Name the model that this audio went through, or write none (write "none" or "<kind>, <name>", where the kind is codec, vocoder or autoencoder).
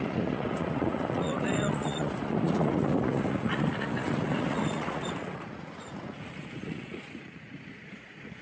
vocoder, Vocos